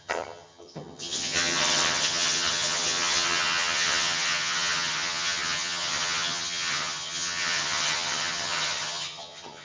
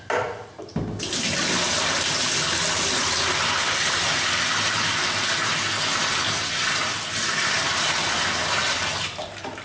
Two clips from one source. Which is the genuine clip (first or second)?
second